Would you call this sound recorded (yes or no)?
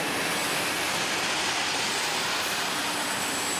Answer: yes